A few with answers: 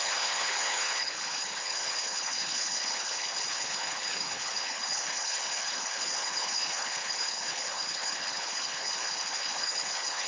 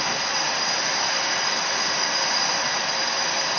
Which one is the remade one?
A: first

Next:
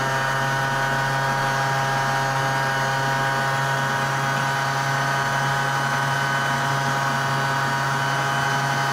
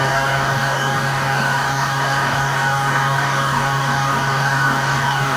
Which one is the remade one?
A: second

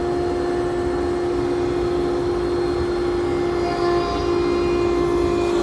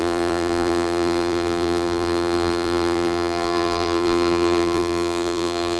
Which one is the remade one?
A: second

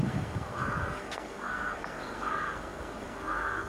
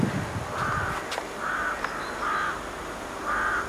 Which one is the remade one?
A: first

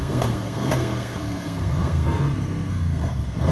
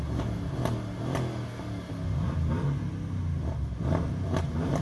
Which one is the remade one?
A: first